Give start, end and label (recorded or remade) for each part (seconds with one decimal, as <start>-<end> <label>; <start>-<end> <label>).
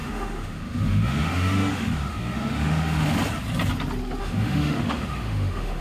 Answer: 0.0-3.2 remade; 3.2-4.2 recorded; 4.2-5.8 remade